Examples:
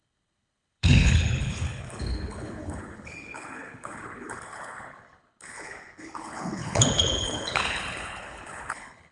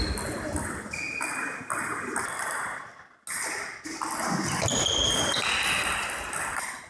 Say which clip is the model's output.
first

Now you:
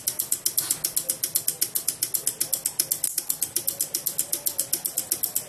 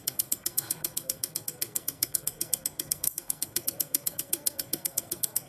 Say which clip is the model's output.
second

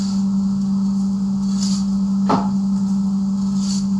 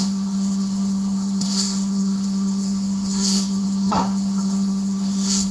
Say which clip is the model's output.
second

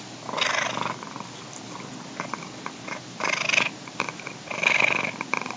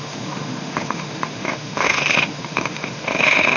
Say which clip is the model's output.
second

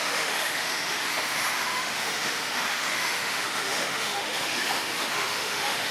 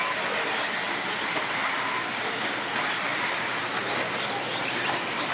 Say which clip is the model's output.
first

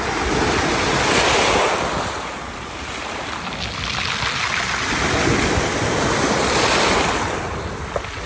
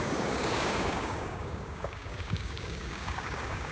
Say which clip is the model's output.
second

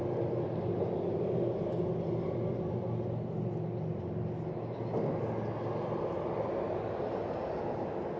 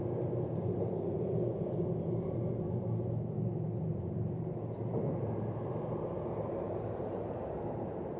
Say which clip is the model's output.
second